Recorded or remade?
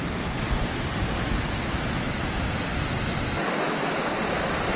recorded